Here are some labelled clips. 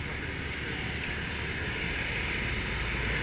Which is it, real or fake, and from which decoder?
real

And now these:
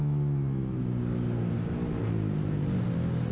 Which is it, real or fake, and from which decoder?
real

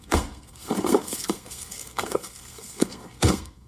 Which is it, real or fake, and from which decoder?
fake, codec, SNAC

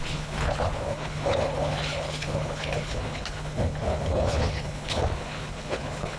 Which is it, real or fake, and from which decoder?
fake, codec, HILCodec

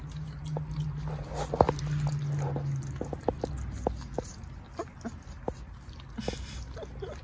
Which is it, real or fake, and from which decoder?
real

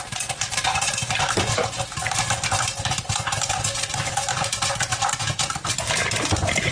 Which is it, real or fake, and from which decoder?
real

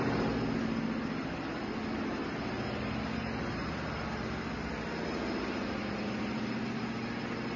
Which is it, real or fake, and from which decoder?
real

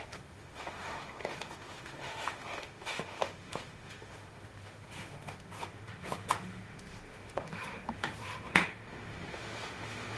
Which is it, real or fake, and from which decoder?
fake, autoencoder, DAC-VAE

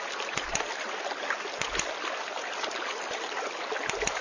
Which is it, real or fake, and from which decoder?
fake, vocoder, BigVGAN v2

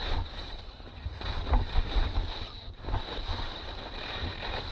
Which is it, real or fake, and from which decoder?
real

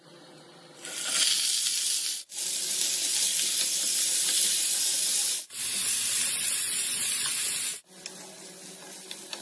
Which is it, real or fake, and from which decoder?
real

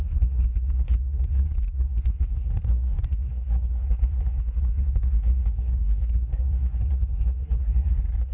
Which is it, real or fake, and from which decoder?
fake, codec, SNAC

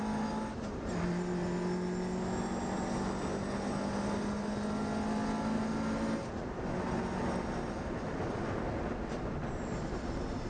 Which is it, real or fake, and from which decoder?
real